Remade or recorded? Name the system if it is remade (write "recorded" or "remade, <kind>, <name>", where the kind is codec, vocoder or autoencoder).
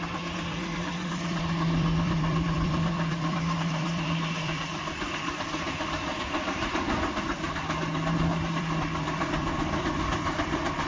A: remade, vocoder, BigVGAN v2